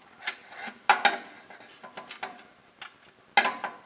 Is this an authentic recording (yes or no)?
yes